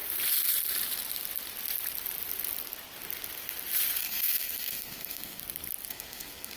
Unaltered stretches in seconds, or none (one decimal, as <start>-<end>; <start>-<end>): 0.0-4.0; 5.4-5.9